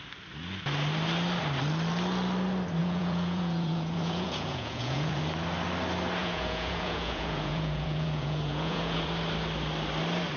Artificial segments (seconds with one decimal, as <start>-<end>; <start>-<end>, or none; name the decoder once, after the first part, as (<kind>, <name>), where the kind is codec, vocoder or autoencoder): 2.8-5.2 (vocoder, Vocos); 6.2-9.1